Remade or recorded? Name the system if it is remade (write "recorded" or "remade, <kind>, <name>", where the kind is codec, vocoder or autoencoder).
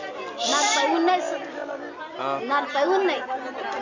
recorded